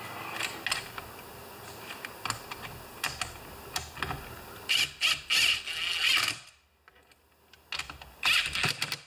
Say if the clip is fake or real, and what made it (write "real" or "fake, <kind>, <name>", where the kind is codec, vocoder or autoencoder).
real